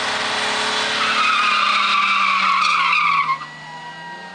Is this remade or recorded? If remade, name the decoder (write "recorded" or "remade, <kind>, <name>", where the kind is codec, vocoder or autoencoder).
recorded